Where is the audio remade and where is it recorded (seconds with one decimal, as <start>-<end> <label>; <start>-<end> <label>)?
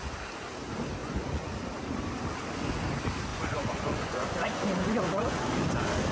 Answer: 0.0-1.0 recorded; 1.0-1.5 remade; 1.5-3.3 recorded; 3.3-5.4 remade; 5.4-6.1 recorded